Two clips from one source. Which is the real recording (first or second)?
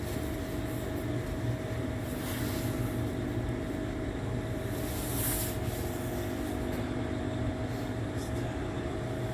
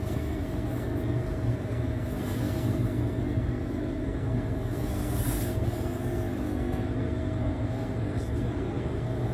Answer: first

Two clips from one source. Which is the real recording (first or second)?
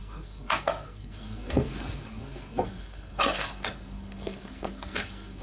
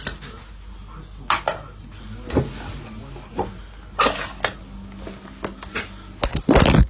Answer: second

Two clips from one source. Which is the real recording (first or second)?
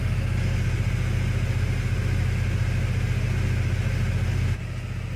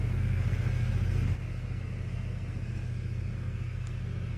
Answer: first